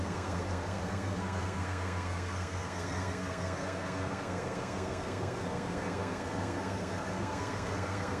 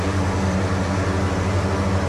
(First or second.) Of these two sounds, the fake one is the first